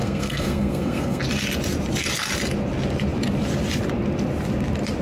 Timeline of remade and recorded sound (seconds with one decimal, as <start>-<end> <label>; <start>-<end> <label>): 0.0-1.2 remade; 1.2-5.0 recorded